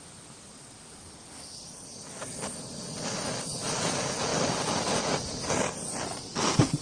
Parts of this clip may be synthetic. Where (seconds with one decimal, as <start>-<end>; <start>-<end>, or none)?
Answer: none